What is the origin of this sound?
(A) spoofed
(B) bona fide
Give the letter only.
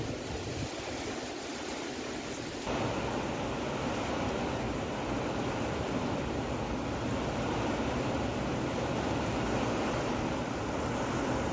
B